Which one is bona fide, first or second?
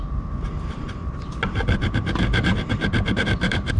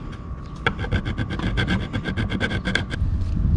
second